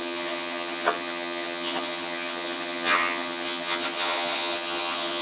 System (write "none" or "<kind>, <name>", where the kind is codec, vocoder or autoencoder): vocoder, HiFi-GAN